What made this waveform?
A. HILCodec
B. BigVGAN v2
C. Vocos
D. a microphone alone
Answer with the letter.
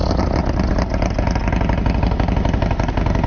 D